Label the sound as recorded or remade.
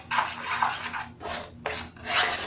recorded